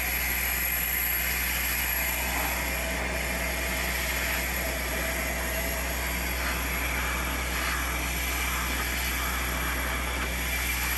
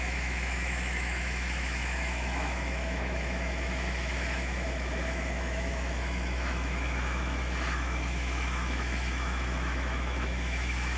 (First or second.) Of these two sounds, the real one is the first